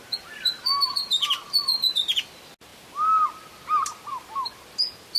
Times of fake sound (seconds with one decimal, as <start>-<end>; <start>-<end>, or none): none